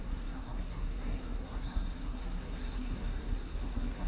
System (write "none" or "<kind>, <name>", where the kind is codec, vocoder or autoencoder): codec, SNAC